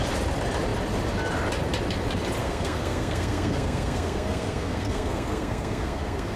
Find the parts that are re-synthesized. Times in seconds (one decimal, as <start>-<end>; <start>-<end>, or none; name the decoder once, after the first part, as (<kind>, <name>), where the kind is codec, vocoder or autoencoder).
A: 2.4-6.4 (codec, SNAC)